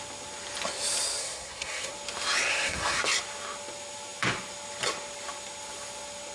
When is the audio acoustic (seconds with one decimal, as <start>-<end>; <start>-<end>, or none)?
0.0-1.2; 1.9-2.5; 3.0-6.3